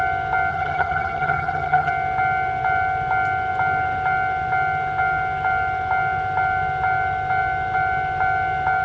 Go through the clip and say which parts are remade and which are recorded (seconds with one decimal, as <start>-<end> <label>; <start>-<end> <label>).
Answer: 0.0-0.5 recorded; 0.5-1.9 remade; 1.9-8.8 recorded